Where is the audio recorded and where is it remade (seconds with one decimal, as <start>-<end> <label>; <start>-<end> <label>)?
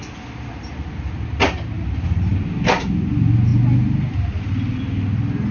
0.0-5.5 recorded